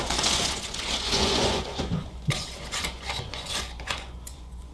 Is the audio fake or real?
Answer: fake